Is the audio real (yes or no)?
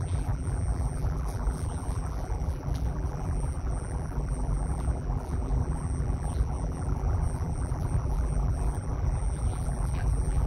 no